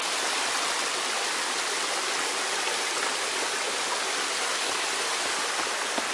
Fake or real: real